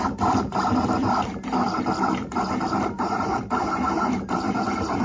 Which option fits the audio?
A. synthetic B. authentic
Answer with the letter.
A